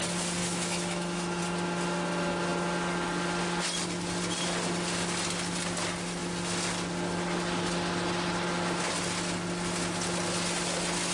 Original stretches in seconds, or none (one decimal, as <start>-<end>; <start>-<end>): 0.0-0.4; 1.4-11.1